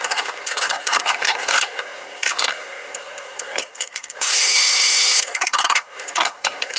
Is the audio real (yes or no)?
no